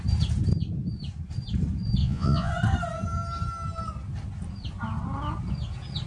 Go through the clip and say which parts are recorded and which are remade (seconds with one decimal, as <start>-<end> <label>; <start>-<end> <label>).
0.0-2.0 recorded; 2.0-2.5 remade; 2.5-6.1 recorded